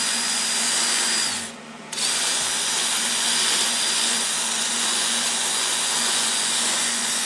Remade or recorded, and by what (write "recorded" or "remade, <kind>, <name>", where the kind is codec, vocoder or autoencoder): remade, vocoder, Vocos